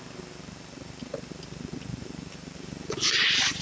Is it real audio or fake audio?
real